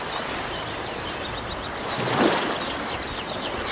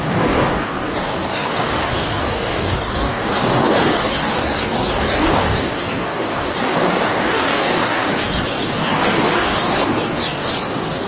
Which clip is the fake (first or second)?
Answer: second